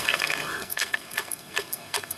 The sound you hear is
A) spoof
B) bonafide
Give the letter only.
A